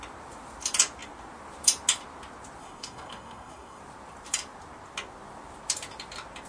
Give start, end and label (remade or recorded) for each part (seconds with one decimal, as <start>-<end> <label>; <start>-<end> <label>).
0.0-2.6 recorded; 2.6-3.8 remade; 3.8-6.5 recorded